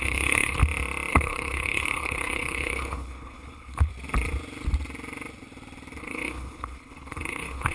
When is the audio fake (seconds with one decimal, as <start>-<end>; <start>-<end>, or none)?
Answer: 0.0-0.6; 1.1-3.9; 6.0-7.7